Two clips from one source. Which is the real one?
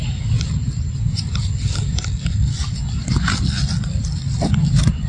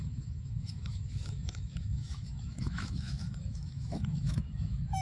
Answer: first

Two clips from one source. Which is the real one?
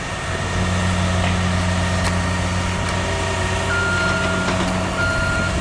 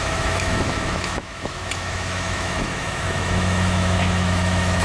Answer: first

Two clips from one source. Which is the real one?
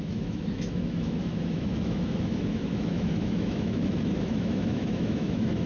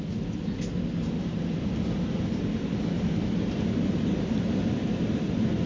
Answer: second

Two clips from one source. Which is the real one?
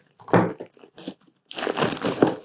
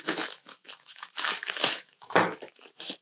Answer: first